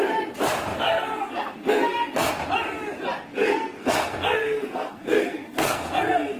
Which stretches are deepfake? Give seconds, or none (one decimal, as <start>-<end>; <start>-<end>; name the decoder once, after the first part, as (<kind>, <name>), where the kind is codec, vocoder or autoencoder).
0.7-2.3 (codec, SNAC); 3.3-6.4